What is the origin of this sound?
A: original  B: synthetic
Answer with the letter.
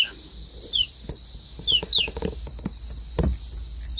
A